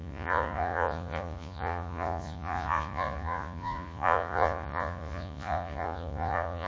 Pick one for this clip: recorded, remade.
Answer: remade